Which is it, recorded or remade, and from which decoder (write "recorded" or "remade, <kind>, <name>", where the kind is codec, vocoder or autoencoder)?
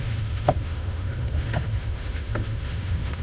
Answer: remade, autoencoder, DAC-VAE